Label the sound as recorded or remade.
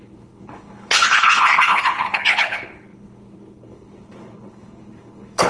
remade